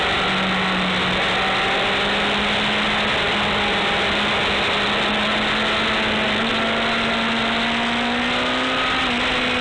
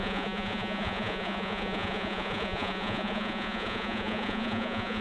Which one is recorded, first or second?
first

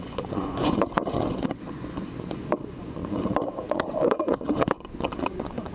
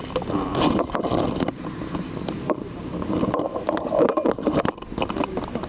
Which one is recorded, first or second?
second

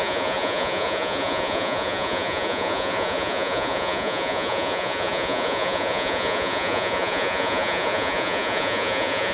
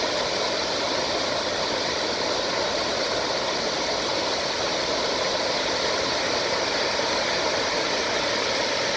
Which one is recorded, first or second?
second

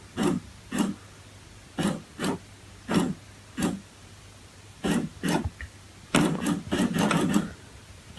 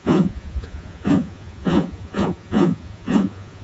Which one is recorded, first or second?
first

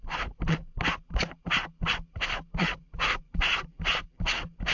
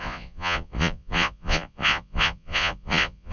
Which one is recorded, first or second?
first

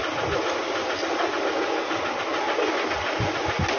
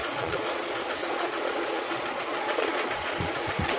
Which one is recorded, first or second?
first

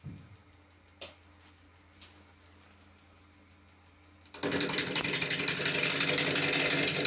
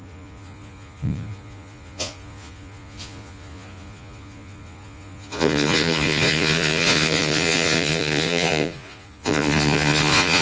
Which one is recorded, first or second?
first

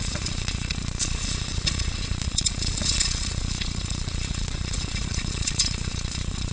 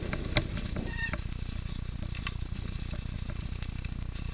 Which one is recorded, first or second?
second